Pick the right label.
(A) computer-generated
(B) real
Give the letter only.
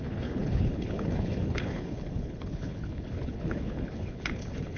A